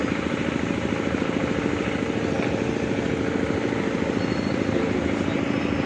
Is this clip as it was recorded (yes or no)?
yes